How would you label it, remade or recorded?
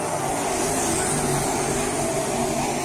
recorded